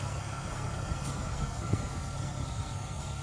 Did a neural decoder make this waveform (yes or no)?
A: yes